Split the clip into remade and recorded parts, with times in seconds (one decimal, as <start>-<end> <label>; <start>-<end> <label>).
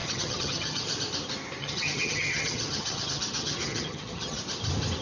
0.0-0.8 remade; 0.8-1.6 recorded; 1.6-4.4 remade; 4.4-5.0 recorded